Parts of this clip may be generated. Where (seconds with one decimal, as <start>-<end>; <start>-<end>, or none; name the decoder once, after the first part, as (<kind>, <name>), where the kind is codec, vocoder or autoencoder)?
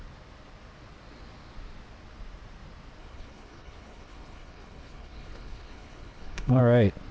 3.0-6.6 (codec, HILCodec)